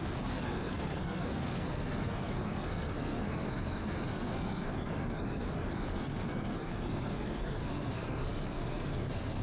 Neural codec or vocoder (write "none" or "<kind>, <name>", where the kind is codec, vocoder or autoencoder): codec, SNAC